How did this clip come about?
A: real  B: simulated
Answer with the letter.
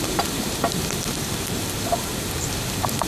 B